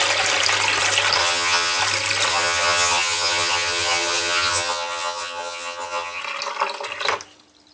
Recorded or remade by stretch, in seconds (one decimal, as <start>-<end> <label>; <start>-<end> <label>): 0.0-1.2 recorded; 1.2-1.8 remade; 1.8-2.3 recorded; 2.3-6.2 remade; 6.2-7.7 recorded